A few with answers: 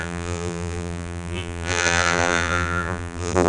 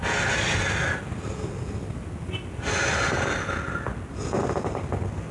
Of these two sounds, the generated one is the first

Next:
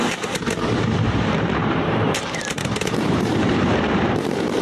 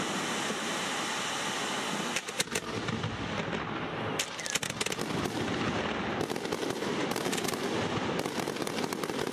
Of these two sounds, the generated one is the first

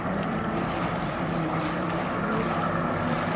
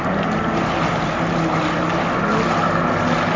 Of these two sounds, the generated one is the first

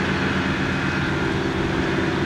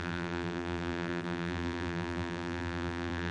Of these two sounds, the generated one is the second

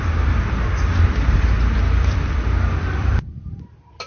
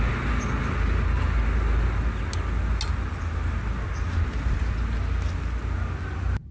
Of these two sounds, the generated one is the first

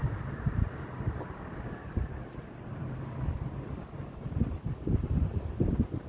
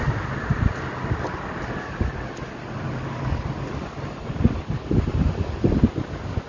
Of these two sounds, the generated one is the first